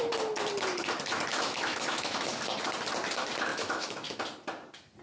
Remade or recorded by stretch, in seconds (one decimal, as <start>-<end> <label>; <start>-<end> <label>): 0.0-1.3 recorded; 1.3-2.4 remade; 2.4-3.5 recorded; 3.5-4.2 remade; 4.2-5.0 recorded